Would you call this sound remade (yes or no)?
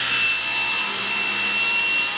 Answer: no